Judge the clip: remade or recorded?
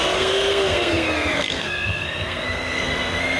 remade